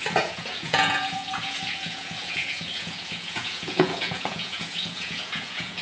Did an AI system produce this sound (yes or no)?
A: yes